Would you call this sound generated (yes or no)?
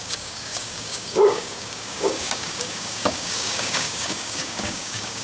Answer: yes